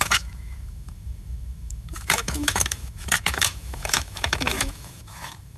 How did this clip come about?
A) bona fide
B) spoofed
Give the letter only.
B